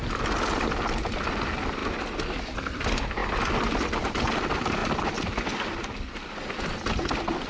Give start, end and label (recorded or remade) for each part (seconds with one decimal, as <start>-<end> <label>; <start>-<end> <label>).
0.0-1.8 remade; 1.8-2.3 recorded; 2.3-3.2 remade; 3.2-4.0 recorded; 4.0-7.5 remade